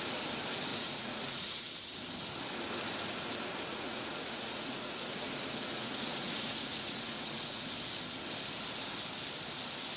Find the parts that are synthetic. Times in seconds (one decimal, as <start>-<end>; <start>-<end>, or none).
0.7-1.6; 3.7-7.7

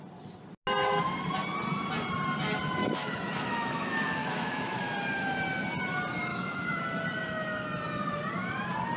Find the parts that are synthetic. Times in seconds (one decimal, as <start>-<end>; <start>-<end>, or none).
2.8-4.9; 6.3-6.8